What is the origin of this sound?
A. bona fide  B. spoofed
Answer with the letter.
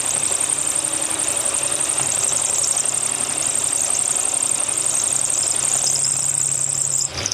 A